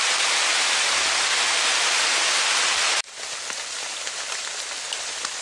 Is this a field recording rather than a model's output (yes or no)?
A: yes